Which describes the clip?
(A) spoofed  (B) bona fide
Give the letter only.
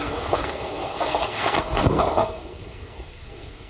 A